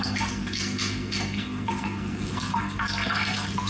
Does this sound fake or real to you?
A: fake